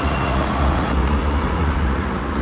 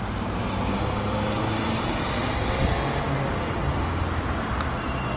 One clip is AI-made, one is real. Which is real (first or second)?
second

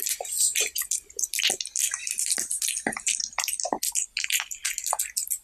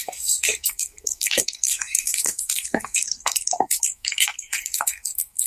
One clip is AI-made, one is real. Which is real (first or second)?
first